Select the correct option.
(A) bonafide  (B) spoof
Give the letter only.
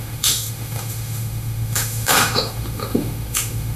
B